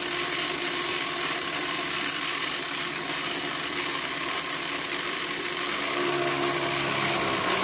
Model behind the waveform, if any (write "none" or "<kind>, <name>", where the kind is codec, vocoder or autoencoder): none